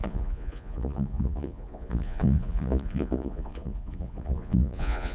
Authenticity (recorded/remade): remade